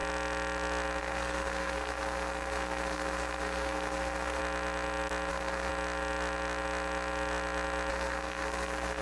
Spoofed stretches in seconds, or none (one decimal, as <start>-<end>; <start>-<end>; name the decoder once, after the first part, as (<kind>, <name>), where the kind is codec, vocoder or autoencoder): 1.0-4.4 (codec, SNAC); 5.3-5.7; 7.9-9.0